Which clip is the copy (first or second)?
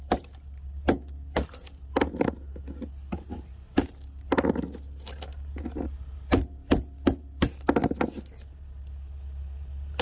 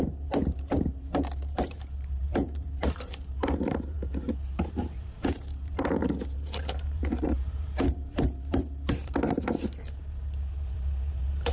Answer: second